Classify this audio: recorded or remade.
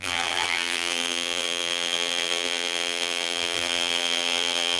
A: remade